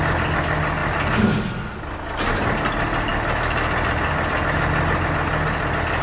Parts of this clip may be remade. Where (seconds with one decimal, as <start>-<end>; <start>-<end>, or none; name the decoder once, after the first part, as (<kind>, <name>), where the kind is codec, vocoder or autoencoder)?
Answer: none